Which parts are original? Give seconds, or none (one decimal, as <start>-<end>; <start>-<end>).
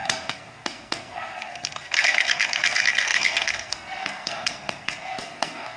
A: none